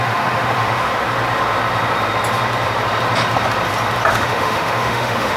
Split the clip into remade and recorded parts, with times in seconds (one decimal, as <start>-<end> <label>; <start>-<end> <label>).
0.0-0.9 remade; 0.9-4.1 recorded; 4.1-5.4 remade